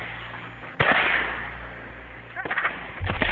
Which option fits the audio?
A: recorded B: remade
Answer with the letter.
A